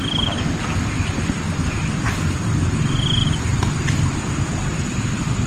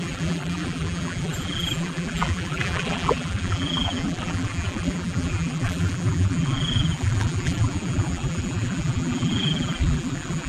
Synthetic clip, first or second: second